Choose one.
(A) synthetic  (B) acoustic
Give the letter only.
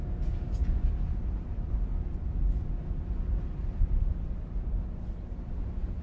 B